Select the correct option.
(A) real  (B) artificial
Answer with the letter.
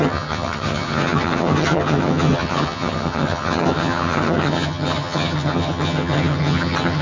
B